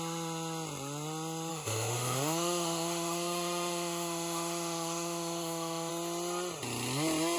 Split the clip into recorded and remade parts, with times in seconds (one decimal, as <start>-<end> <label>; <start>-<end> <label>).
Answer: 0.0-1.5 recorded; 1.5-5.9 remade; 5.9-7.4 recorded